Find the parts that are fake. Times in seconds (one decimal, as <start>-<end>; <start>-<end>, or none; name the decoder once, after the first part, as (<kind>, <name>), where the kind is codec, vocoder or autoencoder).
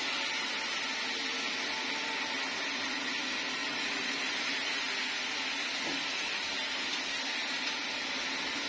3.6-4.4 (vocoder, BigVGAN v2)